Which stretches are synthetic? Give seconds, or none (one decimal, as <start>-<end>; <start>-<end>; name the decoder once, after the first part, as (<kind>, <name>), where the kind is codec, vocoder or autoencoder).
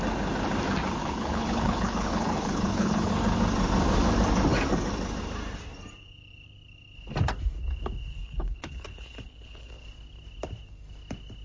1.0-3.1 (codec, HILCodec); 8.1-9.7